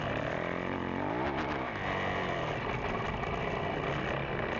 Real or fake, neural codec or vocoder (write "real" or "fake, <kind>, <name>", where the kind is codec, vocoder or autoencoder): real